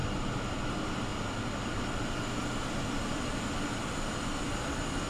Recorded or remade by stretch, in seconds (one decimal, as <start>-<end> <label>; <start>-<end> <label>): 0.0-5.1 recorded